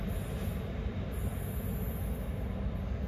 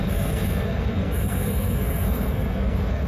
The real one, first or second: first